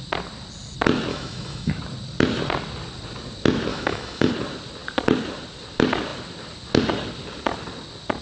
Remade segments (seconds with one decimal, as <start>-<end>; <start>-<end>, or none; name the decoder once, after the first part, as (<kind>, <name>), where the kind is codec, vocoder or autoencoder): 1.1-1.7 (autoencoder, DAC-VAE); 3.7-4.3